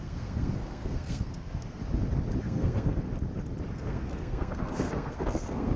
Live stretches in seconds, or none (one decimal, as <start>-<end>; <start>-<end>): 1.8-2.4; 3.0-3.7